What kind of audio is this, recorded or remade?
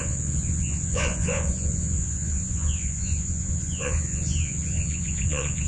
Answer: remade